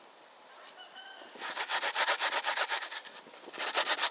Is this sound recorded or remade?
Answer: remade